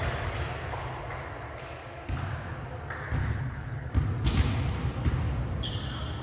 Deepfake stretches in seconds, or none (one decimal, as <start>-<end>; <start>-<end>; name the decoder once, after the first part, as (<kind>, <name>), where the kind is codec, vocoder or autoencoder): 3.2-3.9 (codec, HILCodec)